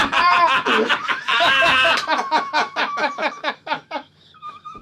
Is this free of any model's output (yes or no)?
no